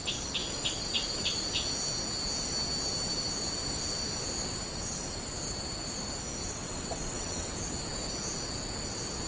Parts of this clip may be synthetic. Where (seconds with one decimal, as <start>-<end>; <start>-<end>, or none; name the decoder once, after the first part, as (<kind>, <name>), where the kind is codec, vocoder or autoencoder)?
6.4-7.5 (vocoder, WaveNeXt)